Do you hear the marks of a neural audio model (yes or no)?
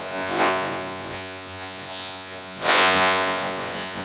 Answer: yes